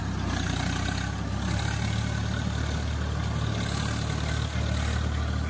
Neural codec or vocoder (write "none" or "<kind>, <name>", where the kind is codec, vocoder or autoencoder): none